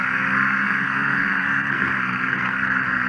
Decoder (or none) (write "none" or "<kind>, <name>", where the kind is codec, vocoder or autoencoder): codec, SNAC